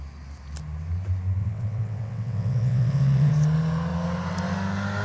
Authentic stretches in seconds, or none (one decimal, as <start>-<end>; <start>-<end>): 0.0-1.4; 3.3-5.0